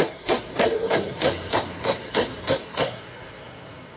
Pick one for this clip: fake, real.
fake